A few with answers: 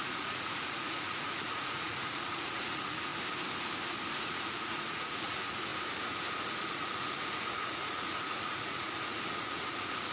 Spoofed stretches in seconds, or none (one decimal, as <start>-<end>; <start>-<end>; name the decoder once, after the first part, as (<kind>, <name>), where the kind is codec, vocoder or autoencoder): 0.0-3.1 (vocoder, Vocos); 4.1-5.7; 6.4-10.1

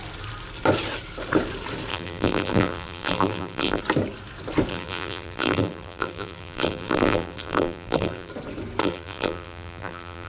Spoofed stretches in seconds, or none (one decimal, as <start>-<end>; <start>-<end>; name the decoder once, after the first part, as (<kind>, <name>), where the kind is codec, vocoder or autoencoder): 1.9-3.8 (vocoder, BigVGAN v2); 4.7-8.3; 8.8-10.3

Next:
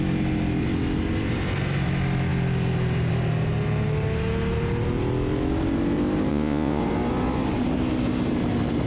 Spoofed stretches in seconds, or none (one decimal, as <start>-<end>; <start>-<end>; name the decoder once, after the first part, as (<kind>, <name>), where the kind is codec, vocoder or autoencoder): 6.3-6.8 (vocoder, Vocos)

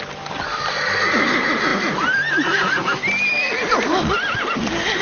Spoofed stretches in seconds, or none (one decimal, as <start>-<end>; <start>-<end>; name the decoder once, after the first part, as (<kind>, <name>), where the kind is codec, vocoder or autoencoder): none